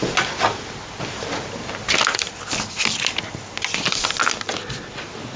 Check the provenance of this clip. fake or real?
real